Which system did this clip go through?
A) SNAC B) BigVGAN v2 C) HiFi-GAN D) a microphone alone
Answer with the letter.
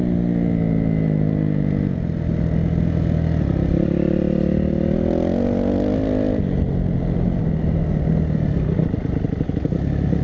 D